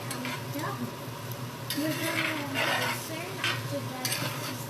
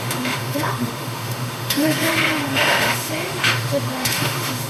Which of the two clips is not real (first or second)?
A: second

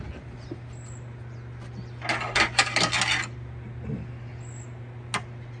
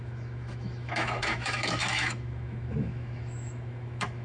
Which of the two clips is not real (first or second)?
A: second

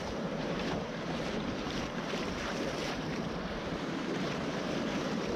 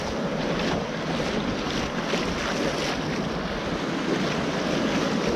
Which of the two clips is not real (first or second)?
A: first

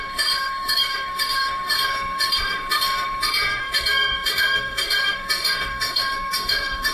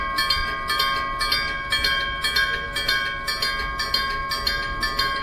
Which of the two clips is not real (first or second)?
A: first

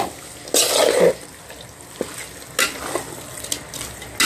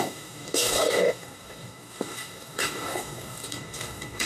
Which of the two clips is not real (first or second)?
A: second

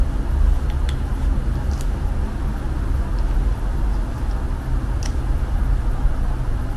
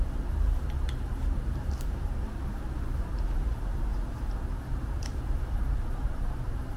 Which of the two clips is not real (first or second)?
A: second